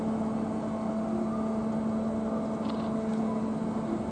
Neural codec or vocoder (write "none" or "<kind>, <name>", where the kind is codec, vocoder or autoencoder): none